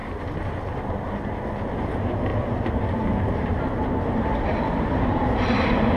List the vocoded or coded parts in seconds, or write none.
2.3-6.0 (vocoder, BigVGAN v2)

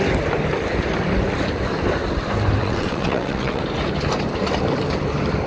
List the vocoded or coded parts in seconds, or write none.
2.6-3.6 (vocoder, WaveNeXt)

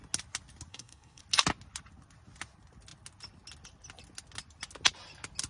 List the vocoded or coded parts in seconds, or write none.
0.7-1.2 (codec, SNAC)